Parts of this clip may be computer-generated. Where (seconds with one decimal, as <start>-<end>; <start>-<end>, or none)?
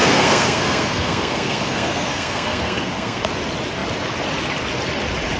0.0-3.2